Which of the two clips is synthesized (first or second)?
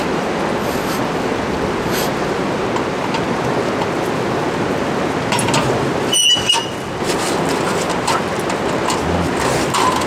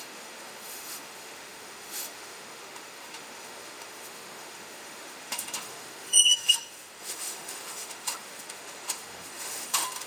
second